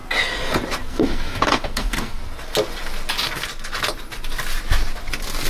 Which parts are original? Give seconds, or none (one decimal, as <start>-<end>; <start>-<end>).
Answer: 0.0-0.8; 2.2-5.5